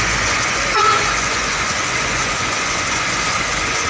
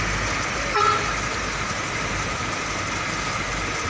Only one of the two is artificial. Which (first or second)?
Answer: first